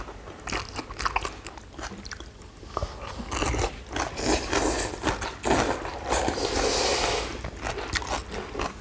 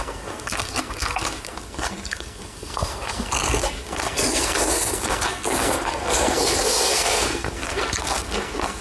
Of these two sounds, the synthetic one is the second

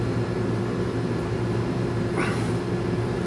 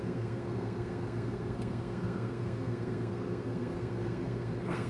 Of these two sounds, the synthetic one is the second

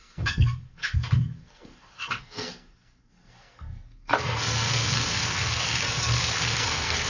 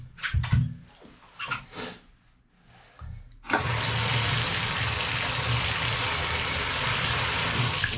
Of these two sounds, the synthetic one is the first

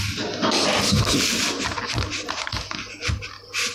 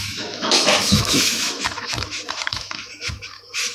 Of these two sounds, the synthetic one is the second